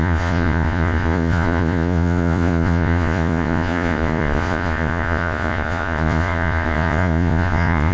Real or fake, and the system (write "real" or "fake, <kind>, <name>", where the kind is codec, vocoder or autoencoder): fake, vocoder, Vocos